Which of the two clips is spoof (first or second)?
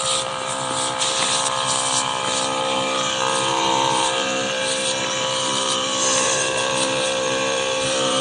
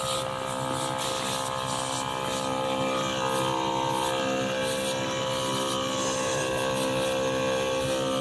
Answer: first